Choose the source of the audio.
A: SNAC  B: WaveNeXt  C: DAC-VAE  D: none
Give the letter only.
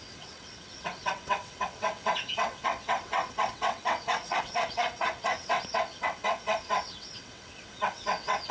B